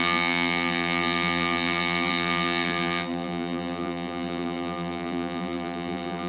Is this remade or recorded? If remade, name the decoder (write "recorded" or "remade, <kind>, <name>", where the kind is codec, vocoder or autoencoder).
remade, vocoder, BigVGAN v2